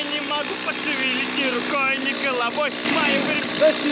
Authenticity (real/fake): real